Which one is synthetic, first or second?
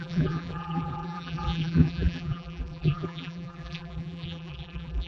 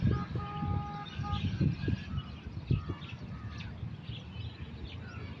first